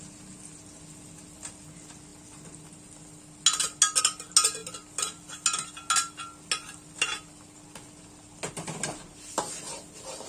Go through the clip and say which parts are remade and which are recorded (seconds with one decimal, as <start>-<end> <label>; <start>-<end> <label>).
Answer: 0.0-10.3 recorded